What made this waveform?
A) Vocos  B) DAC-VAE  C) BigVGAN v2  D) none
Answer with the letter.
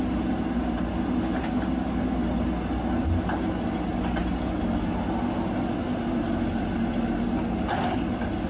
D